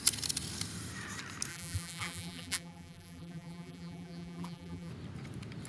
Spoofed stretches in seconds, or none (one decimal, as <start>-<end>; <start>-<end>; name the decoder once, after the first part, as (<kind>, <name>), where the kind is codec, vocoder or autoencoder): 1.5-4.9 (vocoder, BigVGAN v2)